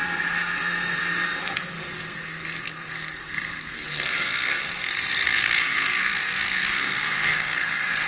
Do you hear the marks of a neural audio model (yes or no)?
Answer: yes